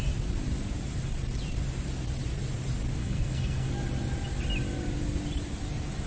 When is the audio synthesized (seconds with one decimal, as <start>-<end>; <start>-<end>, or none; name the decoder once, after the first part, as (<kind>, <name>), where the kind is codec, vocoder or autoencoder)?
3.0-3.7 (codec, SNAC)